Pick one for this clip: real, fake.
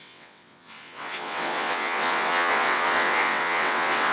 fake